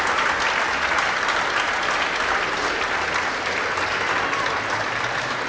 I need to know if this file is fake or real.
real